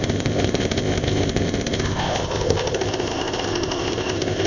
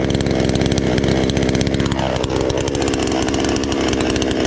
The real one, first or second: second